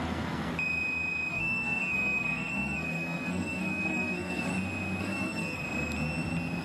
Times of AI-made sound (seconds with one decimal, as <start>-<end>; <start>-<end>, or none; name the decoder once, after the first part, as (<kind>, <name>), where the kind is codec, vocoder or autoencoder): 0.0-0.5 (codec, SNAC); 1.3-4.5; 5.0-5.6